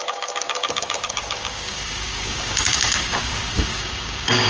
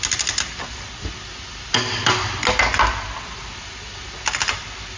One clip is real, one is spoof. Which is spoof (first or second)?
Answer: first